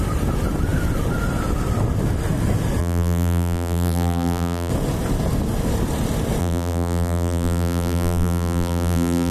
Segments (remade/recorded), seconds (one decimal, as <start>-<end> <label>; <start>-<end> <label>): 0.0-2.8 recorded; 2.8-4.7 remade; 4.7-6.4 recorded; 6.4-9.3 remade